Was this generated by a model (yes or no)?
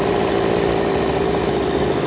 no